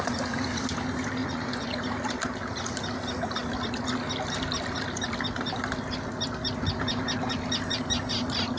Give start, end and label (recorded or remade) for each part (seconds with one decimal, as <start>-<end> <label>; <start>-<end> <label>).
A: 0.0-1.2 recorded; 1.2-1.8 remade; 1.8-8.6 recorded